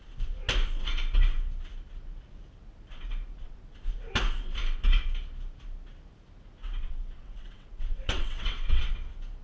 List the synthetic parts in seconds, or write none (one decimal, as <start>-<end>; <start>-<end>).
6.6-8.9